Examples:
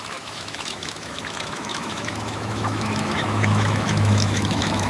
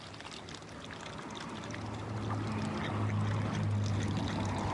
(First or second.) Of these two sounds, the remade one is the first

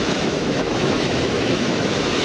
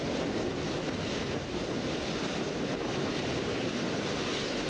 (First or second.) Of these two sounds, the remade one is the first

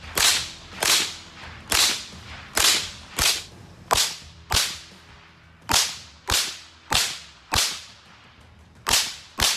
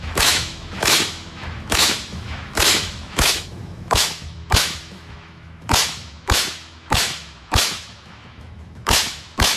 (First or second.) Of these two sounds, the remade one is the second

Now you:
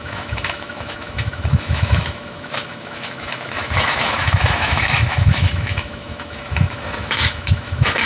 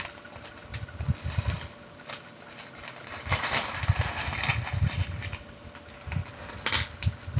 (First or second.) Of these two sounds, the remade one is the first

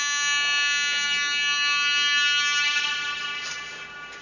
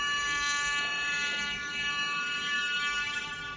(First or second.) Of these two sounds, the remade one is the second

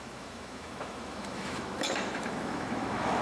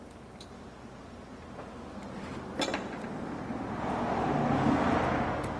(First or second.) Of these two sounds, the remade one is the first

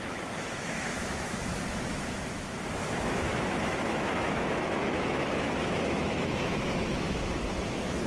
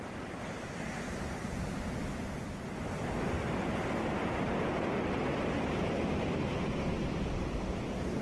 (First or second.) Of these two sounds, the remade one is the first